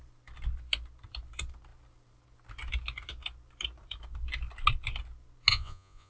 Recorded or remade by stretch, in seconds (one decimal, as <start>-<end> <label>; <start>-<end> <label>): 0.0-5.5 recorded; 5.5-6.1 remade